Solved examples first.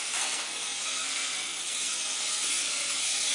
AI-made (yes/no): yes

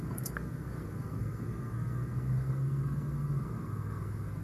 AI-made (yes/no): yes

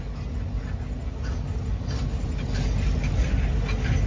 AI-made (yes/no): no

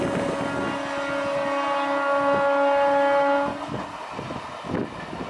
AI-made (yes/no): no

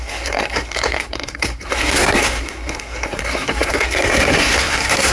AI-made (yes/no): yes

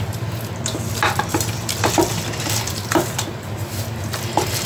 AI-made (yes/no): no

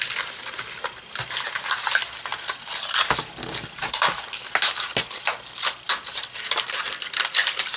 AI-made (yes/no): no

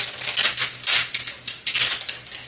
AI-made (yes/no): no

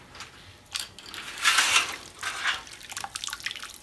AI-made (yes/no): no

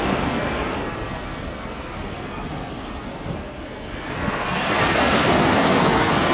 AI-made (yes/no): yes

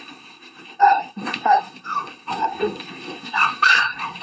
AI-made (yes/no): yes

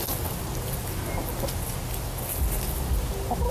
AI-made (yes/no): no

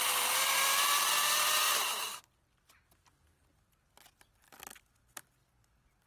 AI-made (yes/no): no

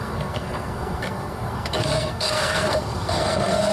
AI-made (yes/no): yes